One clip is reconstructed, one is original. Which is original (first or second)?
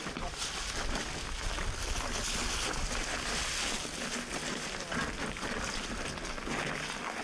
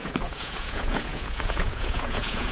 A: first